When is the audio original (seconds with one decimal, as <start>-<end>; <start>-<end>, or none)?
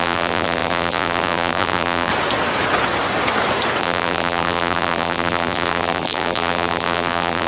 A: 2.1-3.8